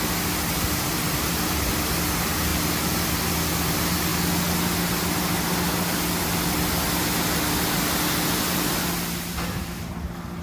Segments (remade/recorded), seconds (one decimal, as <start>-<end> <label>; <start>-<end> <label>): 0.0-10.4 recorded